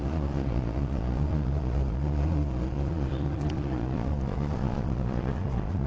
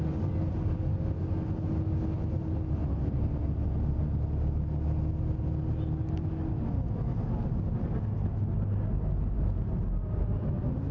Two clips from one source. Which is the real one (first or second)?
second